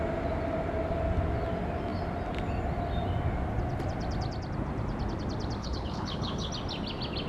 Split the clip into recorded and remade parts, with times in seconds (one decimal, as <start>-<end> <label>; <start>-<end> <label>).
0.0-5.6 recorded; 5.6-6.5 remade; 6.5-7.3 recorded